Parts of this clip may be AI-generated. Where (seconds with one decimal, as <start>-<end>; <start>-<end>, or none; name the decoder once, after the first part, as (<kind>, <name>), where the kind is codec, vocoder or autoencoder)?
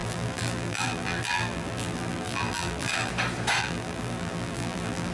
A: 0.0-3.1 (vocoder, BigVGAN v2); 3.6-5.1